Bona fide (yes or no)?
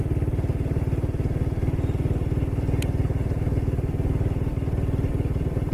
yes